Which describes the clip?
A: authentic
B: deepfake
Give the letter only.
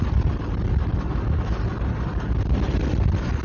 A